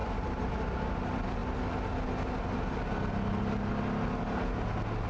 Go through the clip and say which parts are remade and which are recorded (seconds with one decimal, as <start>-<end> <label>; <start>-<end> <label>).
0.0-0.5 remade; 0.5-5.1 recorded